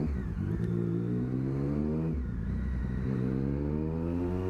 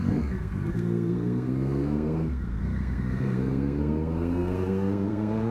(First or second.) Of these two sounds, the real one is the first